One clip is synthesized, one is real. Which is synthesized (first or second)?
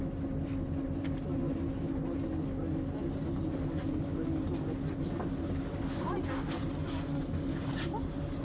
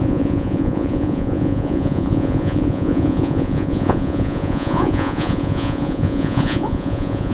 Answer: second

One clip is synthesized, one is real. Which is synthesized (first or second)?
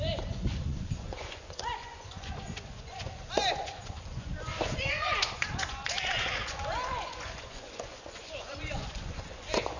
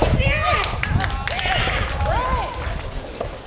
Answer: first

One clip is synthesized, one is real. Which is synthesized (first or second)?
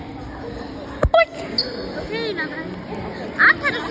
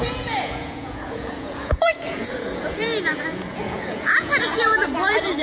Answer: second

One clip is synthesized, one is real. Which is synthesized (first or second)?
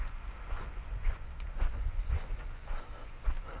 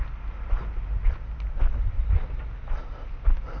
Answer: first